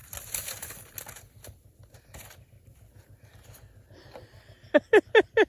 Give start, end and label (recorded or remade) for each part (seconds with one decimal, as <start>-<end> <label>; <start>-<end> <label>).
0.0-5.5 recorded